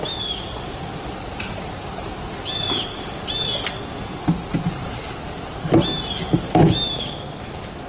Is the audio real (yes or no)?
yes